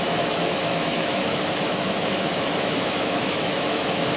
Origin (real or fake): fake